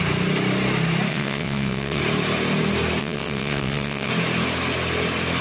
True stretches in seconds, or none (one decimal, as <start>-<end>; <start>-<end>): 0.0-1.1; 2.0-3.0; 4.1-5.4